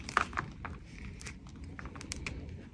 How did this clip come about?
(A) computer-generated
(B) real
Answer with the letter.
B